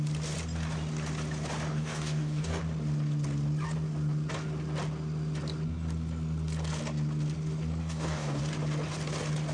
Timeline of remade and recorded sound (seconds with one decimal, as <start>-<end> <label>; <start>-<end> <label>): 0.0-1.7 recorded; 1.7-2.6 remade; 2.6-7.8 recorded; 7.8-8.4 remade; 8.4-9.5 recorded